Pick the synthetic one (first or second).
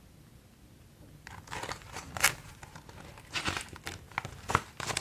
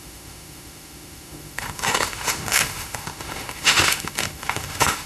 second